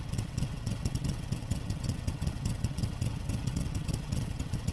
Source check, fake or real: fake